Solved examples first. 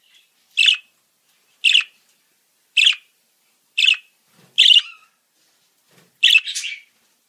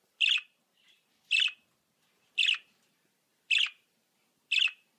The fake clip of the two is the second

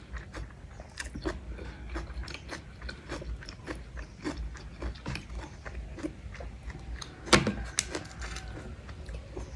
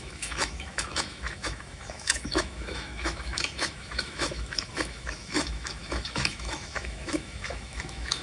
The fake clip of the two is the second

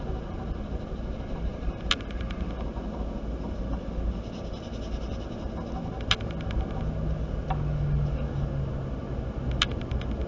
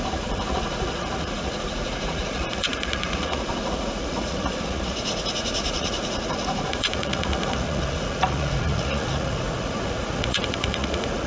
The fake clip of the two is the second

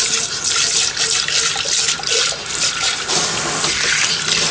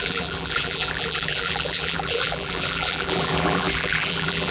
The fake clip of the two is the second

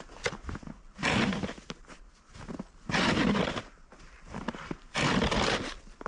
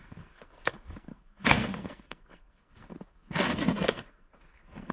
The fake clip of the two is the second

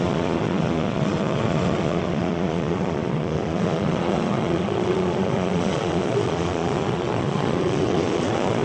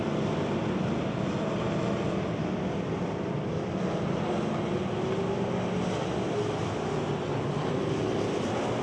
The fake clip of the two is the first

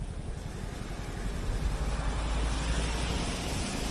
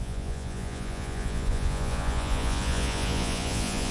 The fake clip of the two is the second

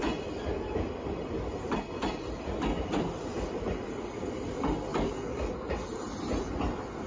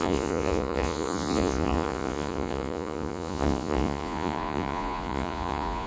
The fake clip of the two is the second